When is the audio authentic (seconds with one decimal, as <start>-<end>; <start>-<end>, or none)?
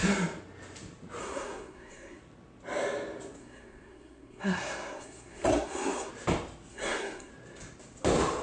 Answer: 0.0-1.2; 2.2-3.4; 6.1-6.7; 7.3-8.4